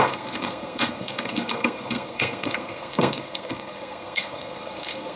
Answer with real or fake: fake